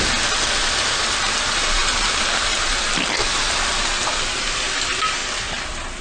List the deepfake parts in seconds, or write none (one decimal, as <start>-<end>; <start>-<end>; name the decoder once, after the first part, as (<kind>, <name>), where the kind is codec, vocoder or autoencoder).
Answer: 0.6-2.1 (vocoder, BigVGAN v2); 2.5-4.6; 5.2-6.0

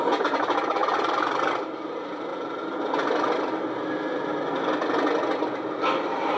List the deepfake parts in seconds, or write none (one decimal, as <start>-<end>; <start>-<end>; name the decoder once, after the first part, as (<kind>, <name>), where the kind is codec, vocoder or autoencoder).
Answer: 0.0-0.8 (vocoder, BigVGAN v2); 1.9-2.3

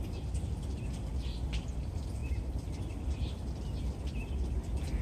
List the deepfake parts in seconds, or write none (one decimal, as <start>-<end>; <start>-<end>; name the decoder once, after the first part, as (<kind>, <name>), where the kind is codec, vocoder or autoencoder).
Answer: none

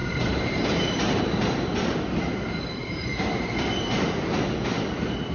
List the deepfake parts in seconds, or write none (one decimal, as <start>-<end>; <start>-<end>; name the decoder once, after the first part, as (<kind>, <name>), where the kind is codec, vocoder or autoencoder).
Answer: 0.0-1.2 (vocoder, BigVGAN v2); 2.8-3.5

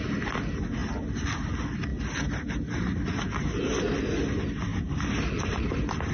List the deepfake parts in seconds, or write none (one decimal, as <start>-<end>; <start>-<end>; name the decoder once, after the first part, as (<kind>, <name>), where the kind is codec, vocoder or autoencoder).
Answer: 4.7-6.1 (vocoder, BigVGAN v2)

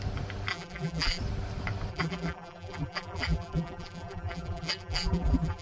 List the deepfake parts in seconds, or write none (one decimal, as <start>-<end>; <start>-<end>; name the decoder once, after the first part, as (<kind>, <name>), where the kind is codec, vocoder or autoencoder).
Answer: 0.5-1.2 (vocoder, BigVGAN v2); 1.9-5.6

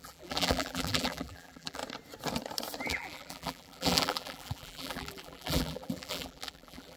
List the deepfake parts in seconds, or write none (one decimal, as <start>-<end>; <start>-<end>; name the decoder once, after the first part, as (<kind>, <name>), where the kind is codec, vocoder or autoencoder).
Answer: 0.0-1.8 (vocoder, BigVGAN v2); 2.9-7.0